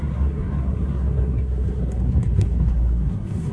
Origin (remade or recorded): remade